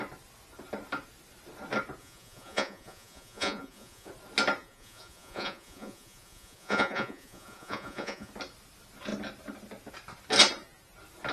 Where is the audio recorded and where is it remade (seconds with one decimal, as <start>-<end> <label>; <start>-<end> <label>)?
0.0-2.0 recorded; 2.0-4.1 remade; 4.1-4.6 recorded; 4.6-8.3 remade; 8.3-11.3 recorded